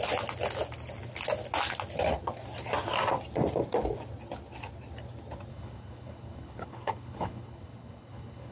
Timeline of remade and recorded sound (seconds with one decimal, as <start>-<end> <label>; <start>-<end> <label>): 0.0-5.5 recorded; 5.5-8.5 remade